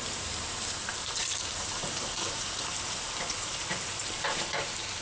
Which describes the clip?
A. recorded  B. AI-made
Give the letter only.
B